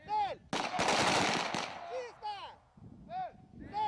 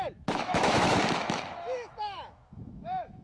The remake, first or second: second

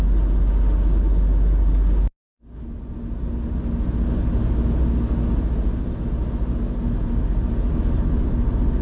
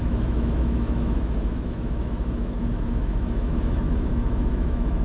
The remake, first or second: second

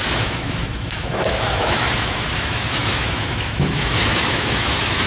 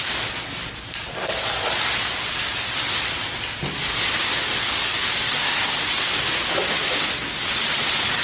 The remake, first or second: first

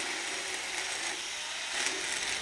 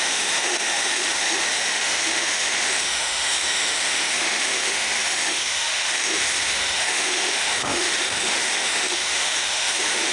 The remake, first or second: second